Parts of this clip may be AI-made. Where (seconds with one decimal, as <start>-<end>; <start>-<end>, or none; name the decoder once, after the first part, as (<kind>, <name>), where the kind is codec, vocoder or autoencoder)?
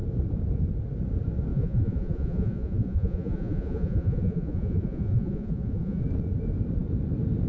1.5-6.0 (vocoder, Vocos)